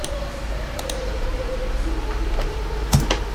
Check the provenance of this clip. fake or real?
fake